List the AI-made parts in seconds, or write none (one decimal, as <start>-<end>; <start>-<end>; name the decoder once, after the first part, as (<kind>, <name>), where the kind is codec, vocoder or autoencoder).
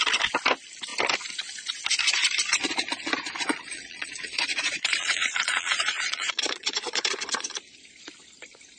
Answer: 3.4-7.5 (vocoder, Vocos)